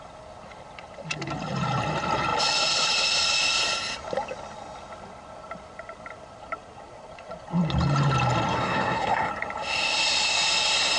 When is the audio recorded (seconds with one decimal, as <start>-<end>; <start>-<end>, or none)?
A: 0.0-8.5; 9.3-11.0